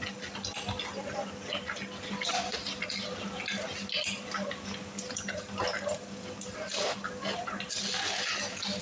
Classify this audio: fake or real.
real